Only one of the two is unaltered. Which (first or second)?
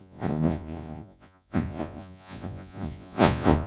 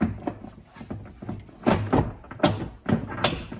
second